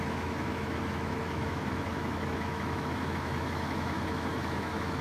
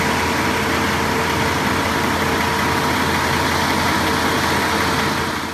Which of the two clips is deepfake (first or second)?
first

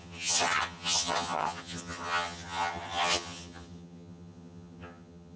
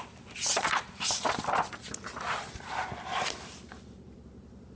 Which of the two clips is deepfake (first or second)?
first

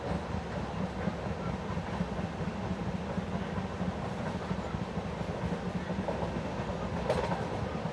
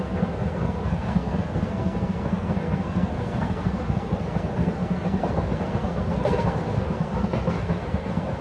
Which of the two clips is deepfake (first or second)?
second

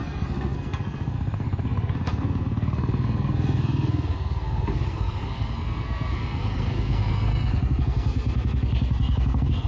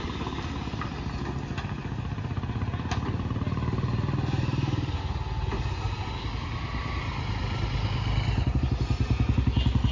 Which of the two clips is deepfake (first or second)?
first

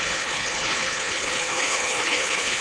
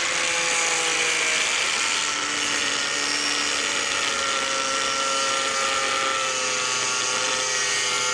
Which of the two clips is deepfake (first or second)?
first